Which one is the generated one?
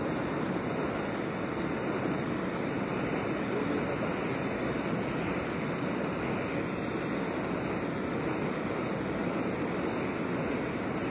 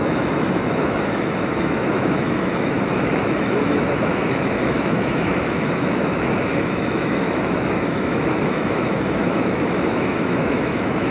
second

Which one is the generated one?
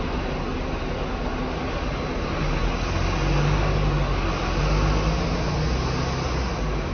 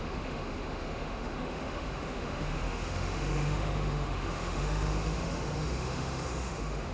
second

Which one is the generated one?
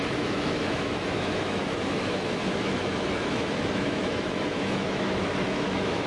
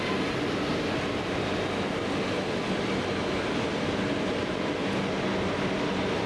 first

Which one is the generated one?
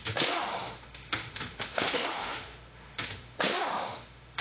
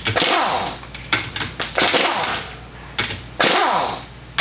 first